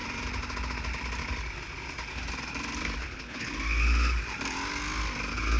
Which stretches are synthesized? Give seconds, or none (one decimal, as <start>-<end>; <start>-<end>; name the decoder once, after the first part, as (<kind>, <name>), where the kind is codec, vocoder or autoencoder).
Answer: 3.0-3.5 (codec, HILCodec)